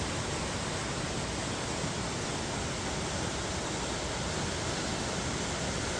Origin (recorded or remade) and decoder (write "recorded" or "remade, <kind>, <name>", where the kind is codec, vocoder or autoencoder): recorded